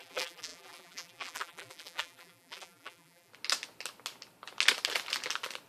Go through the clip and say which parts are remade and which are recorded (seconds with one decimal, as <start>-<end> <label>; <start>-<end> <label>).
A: 0.0-3.3 remade; 3.3-5.7 recorded